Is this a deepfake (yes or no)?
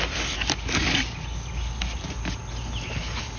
no